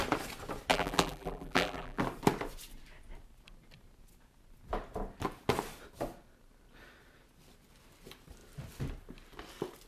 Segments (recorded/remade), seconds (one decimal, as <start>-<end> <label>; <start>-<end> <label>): 0.0-0.7 recorded; 0.7-2.0 remade; 2.0-9.9 recorded